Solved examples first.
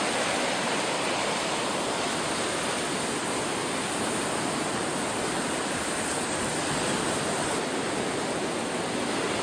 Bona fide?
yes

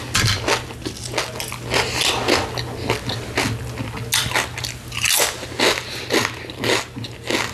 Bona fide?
yes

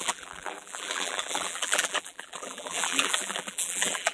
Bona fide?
no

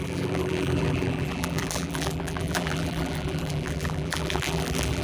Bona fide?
no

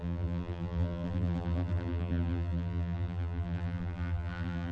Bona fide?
no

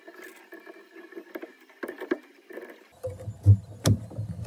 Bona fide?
yes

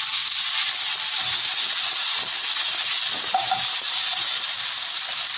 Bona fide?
yes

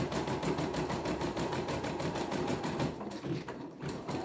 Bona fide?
no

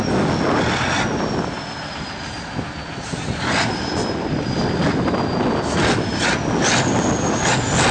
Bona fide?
yes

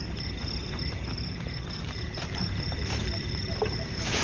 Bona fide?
no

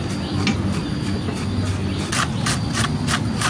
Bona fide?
yes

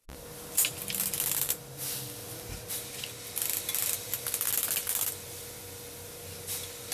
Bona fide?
yes